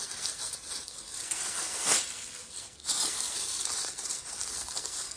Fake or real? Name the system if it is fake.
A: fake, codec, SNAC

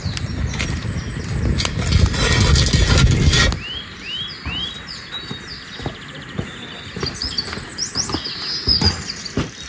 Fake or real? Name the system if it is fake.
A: real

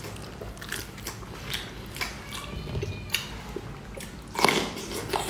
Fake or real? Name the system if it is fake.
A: real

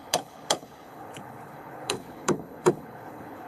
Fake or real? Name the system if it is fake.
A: fake, codec, HILCodec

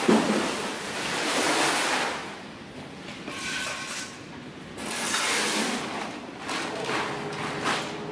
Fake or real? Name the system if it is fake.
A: real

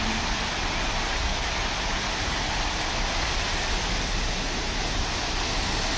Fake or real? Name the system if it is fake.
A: real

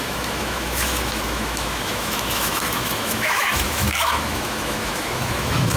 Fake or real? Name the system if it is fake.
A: fake, autoencoder, DAC-VAE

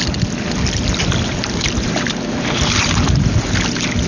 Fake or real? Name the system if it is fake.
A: real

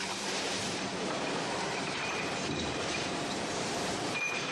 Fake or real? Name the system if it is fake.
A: fake, vocoder, BigVGAN v2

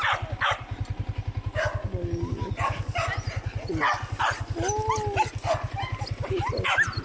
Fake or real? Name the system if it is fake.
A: real